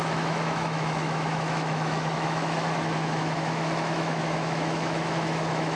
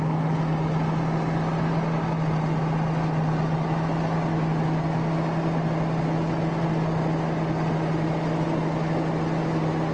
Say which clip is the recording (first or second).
second